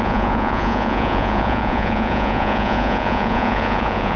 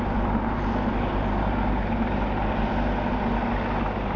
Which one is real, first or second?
second